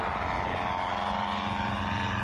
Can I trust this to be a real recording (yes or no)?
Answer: yes